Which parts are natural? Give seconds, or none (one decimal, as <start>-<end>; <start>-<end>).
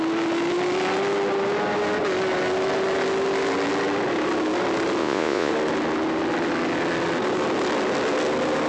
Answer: 0.0-5.0; 5.5-8.7